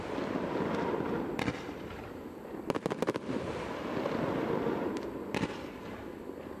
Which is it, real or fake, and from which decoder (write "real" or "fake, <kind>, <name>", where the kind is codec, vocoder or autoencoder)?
real